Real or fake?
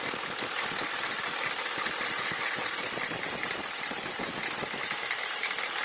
real